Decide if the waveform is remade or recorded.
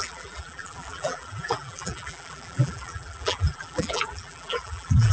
remade